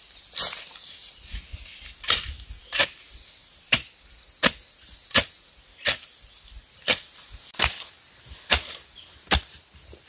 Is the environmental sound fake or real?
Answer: real